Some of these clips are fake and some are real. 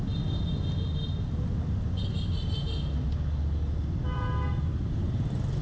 real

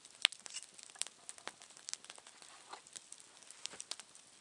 real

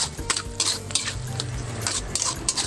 real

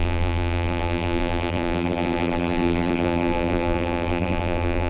fake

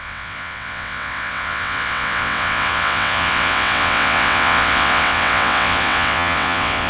fake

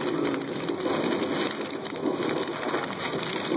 real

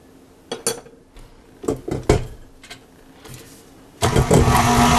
real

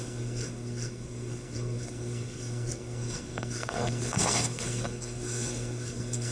fake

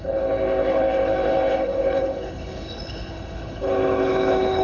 fake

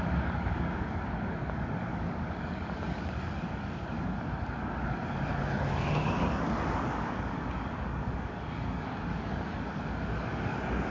fake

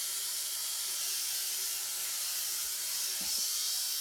fake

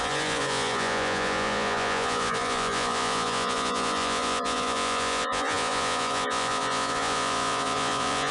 fake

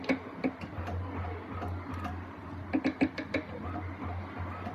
real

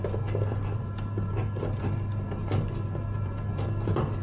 fake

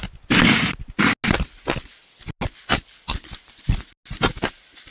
real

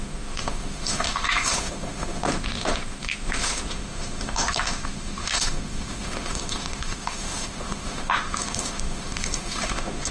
fake